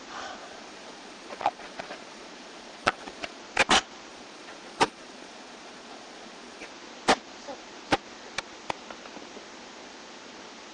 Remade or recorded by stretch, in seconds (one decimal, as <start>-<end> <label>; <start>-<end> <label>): 0.0-0.4 recorded; 0.4-3.4 remade; 3.4-4.1 recorded; 4.1-6.7 remade; 6.7-10.7 recorded